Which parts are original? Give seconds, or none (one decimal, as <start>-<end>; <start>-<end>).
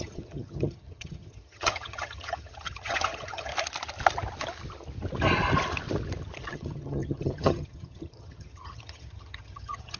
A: 3.5-6.5